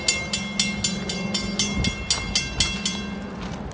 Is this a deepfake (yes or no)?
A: no